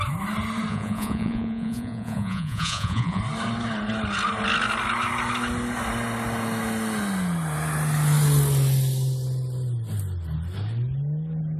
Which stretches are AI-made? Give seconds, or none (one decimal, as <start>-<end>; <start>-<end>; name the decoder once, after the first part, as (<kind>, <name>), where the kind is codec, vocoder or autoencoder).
0.7-3.2 (vocoder, Vocos)